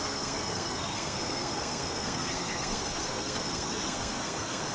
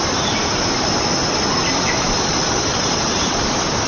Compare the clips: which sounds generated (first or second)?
first